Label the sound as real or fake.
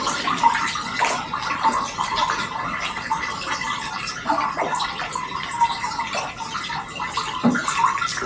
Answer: real